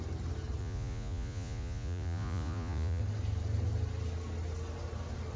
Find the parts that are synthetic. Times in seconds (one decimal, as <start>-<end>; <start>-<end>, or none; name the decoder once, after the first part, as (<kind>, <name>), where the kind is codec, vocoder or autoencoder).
0.6-3.0 (vocoder, Vocos)

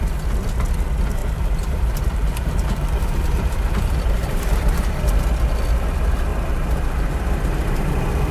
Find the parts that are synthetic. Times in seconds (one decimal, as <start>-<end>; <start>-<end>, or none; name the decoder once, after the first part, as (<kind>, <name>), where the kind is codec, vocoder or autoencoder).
1.2-5.0 (vocoder, BigVGAN v2); 6.3-7.9

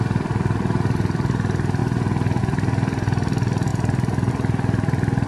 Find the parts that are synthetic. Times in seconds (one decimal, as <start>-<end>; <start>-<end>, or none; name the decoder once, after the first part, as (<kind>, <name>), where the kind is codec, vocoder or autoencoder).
0.0-1.8 (vocoder, BigVGAN v2); 2.4-5.3

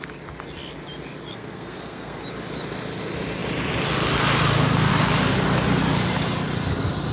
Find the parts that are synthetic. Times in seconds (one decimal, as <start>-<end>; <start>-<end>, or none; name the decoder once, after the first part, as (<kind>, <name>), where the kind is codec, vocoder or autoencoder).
1.3-2.2 (codec, SNAC)

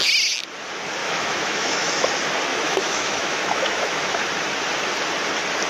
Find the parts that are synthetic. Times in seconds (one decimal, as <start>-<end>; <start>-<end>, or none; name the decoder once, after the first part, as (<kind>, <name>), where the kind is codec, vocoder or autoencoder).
1.0-2.1 (autoencoder, DAC-VAE); 2.5-4.2

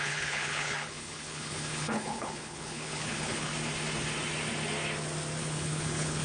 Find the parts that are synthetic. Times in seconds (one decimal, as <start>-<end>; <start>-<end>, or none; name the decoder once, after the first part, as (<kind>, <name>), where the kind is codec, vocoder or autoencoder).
0.0-3.5 (codec, HILCodec); 5.4-6.2